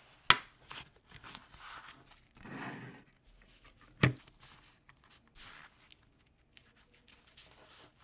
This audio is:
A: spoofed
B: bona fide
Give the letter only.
B